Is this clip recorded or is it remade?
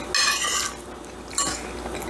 recorded